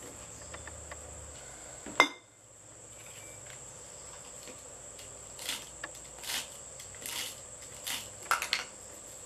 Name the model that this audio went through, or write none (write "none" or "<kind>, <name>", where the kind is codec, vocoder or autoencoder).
none